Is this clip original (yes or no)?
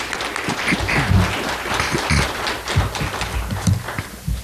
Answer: yes